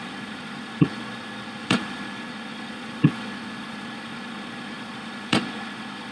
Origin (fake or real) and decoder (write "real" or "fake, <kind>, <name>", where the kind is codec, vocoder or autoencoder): fake, vocoder, Vocos